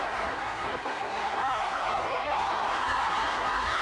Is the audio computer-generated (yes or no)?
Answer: yes